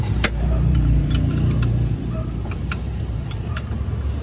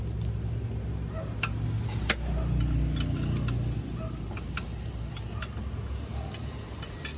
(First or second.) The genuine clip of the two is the second